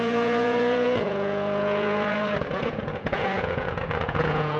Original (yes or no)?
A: no